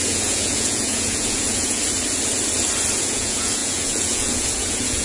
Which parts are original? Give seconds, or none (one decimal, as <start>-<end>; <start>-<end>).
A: 1.8-3.0